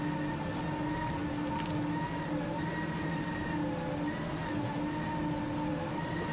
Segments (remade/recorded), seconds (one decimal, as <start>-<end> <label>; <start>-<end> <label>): 0.0-6.3 recorded

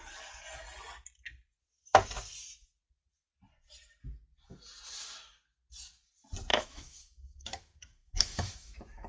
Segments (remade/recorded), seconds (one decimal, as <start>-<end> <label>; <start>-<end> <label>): 0.0-6.5 recorded; 6.5-9.1 remade